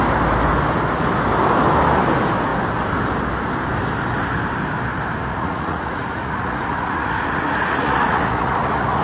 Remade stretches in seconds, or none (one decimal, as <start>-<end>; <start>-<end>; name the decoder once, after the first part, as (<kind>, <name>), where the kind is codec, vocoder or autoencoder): 5.3-9.0 (vocoder, Vocos)